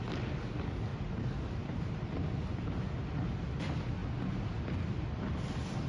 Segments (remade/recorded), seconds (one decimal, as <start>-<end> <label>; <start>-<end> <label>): 0.0-0.9 recorded; 0.9-1.8 remade; 1.8-5.9 recorded